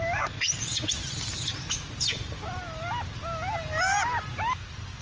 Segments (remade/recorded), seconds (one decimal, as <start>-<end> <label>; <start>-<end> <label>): 0.0-5.0 recorded